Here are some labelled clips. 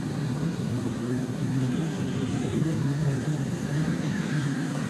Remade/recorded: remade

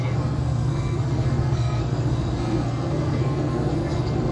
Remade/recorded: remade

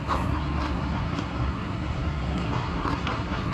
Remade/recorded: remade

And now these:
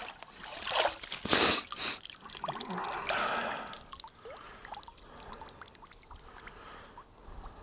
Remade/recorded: recorded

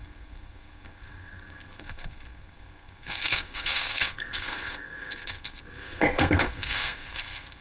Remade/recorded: remade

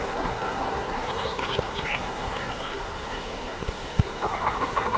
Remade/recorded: remade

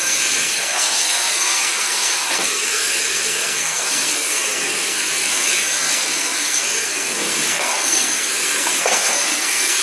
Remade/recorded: remade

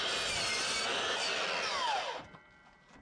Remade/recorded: recorded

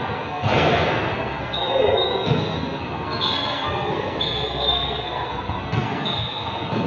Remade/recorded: remade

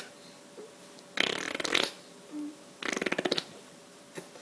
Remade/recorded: recorded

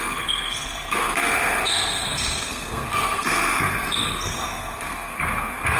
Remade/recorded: remade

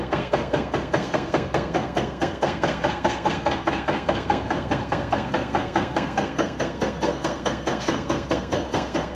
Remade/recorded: remade